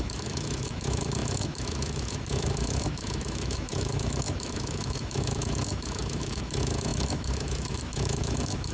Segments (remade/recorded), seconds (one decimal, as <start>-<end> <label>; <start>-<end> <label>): 0.0-8.7 remade